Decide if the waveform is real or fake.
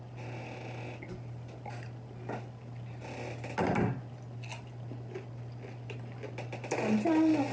real